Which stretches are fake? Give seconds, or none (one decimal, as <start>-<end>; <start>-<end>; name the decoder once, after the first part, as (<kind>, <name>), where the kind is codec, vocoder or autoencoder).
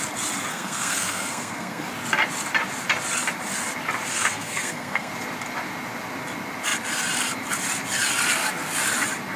0.5-1.9 (codec, SNAC); 4.1-5.1